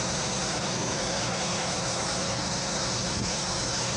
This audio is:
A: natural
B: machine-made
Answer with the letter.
B